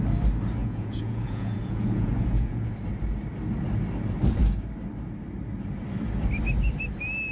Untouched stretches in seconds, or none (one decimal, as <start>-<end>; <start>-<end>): 0.0-0.6; 2.7-7.3